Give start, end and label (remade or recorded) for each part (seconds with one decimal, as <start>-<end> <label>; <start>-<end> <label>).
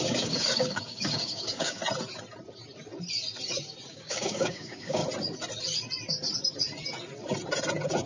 0.0-1.8 remade; 1.8-3.9 recorded; 3.9-5.0 remade; 5.0-8.1 recorded